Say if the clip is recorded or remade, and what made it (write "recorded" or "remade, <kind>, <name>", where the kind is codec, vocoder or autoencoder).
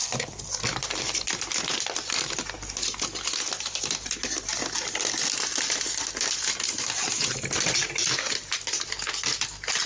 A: recorded